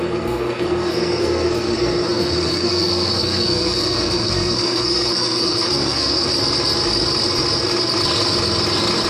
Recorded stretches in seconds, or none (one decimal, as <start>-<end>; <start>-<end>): 6.3-9.1